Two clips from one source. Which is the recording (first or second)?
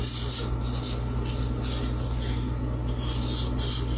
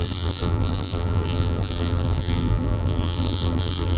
first